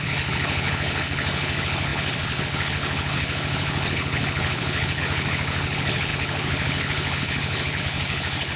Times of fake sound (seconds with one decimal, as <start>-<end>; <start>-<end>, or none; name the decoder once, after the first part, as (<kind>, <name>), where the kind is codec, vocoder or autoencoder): 0.0-8.6 (codec, HILCodec)